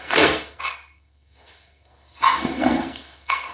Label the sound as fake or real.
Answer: fake